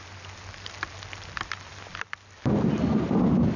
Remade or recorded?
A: recorded